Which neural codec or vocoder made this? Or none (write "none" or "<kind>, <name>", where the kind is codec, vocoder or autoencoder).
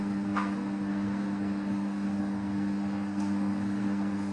codec, SNAC